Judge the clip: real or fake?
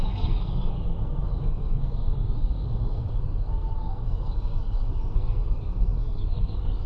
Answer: fake